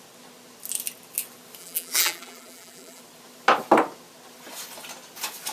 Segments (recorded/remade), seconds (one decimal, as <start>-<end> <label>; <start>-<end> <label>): 0.0-1.6 recorded; 1.6-3.0 remade; 3.0-5.5 recorded

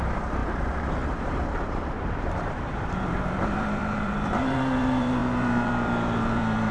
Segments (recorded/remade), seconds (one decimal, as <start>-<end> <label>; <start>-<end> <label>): 0.0-6.7 remade

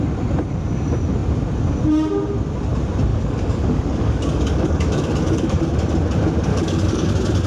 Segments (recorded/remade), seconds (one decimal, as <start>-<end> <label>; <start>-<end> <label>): 0.0-3.1 recorded; 3.1-5.6 remade; 5.6-6.5 recorded; 6.5-7.1 remade; 7.1-7.5 recorded